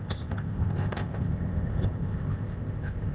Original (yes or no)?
no